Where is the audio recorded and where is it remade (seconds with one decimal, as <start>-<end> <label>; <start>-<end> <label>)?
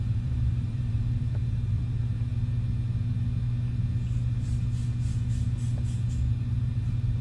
0.0-2.3 remade; 2.3-6.6 recorded; 6.6-7.2 remade